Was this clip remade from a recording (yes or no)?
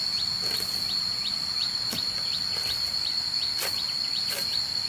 no